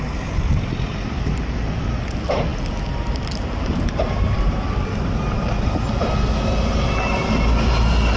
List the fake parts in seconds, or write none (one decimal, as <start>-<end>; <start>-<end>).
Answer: 0.9-1.6